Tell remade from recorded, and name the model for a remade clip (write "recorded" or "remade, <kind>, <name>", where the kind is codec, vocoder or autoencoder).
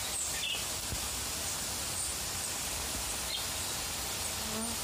recorded